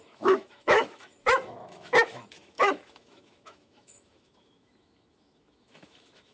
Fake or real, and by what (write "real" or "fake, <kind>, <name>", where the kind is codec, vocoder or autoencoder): fake, autoencoder, DAC-VAE